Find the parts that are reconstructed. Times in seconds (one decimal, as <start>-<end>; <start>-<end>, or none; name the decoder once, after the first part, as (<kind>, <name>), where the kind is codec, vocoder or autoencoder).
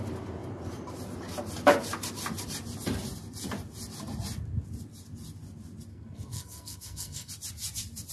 5.9-7.3 (codec, SNAC)